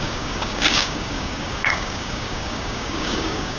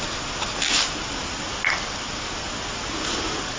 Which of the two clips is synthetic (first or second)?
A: first